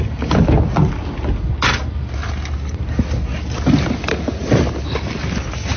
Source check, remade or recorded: recorded